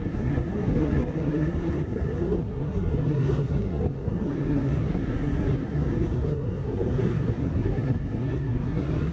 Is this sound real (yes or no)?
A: no